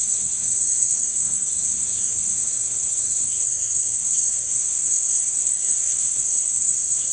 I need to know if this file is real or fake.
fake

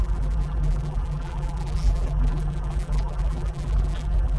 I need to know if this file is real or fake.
fake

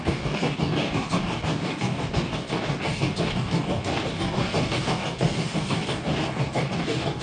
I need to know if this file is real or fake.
fake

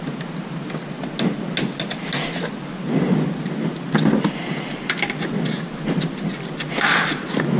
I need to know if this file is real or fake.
real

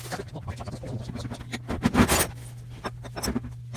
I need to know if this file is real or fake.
real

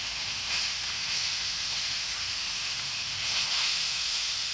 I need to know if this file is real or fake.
fake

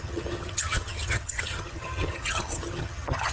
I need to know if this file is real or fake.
fake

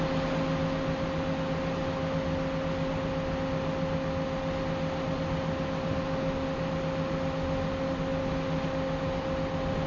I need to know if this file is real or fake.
real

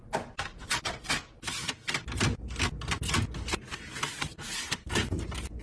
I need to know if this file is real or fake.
real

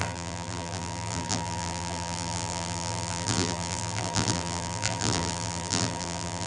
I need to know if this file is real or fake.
fake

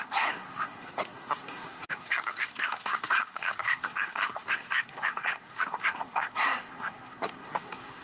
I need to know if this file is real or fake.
fake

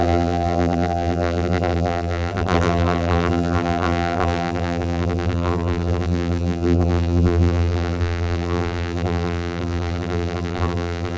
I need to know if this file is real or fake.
fake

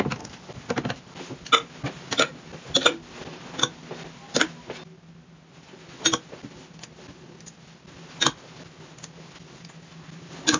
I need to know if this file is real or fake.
real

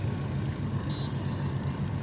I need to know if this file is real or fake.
real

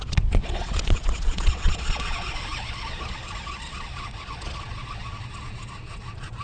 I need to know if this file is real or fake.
fake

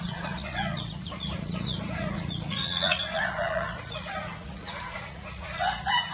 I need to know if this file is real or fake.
fake